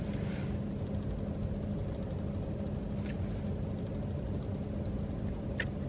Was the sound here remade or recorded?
recorded